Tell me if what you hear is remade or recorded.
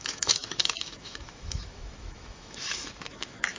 remade